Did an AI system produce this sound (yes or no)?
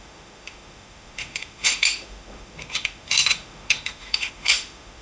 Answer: yes